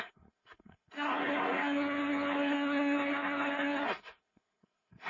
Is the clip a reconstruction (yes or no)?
yes